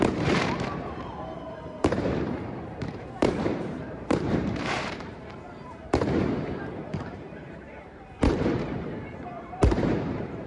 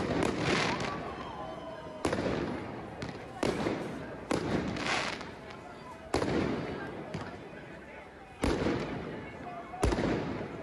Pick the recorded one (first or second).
second